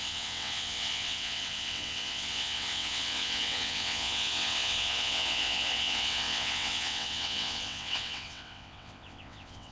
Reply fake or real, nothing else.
fake